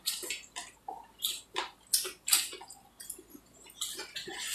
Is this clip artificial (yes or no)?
no